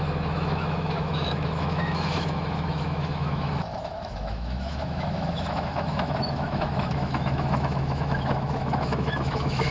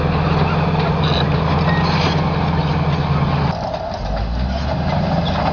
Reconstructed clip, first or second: first